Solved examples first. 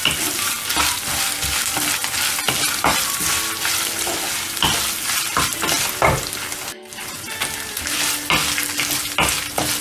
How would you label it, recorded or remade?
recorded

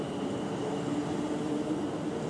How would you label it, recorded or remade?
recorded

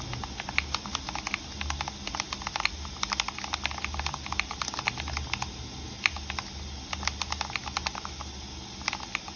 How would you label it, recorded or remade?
recorded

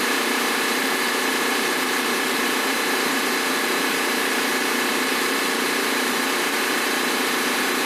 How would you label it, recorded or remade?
remade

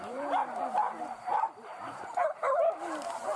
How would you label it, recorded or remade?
remade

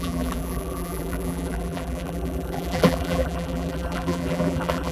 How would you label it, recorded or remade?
remade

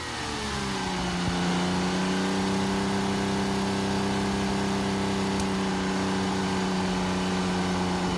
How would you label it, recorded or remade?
recorded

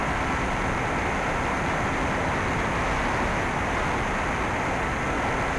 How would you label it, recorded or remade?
recorded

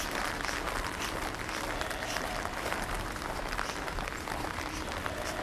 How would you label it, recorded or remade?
remade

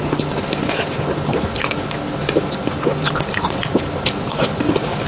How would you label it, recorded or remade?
recorded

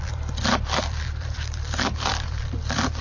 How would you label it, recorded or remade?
remade